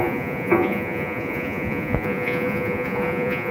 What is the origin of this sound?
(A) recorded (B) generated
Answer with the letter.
B